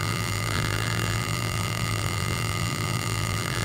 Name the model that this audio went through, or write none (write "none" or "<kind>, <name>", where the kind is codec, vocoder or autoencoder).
vocoder, BigVGAN v2